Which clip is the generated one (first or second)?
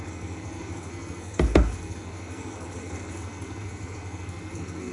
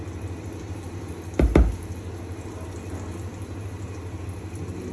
first